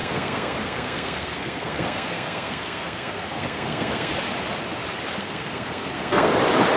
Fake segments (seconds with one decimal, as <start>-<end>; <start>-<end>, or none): 0.0-4.1; 5.2-6.3